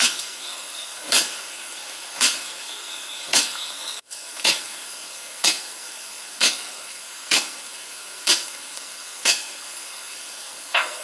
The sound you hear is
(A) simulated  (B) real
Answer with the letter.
A